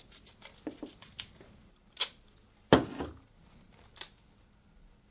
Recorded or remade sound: recorded